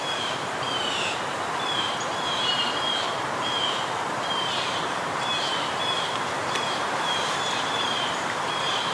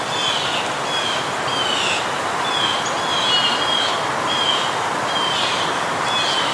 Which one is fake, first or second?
first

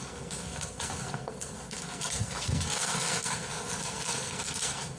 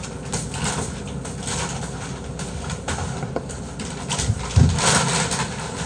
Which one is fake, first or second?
first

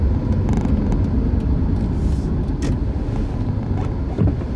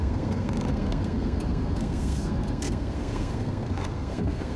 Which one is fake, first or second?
second